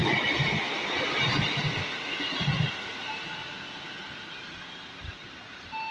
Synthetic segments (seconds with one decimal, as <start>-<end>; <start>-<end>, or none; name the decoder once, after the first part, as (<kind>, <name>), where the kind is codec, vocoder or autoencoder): none